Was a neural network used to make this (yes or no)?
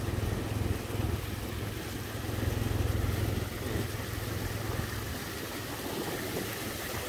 no